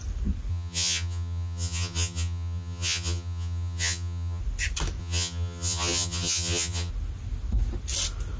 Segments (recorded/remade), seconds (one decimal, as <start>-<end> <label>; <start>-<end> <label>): 0.0-0.5 recorded; 0.5-4.4 remade; 4.4-5.0 recorded; 5.0-6.9 remade; 6.9-8.4 recorded